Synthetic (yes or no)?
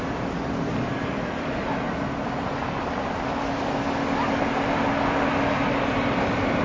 no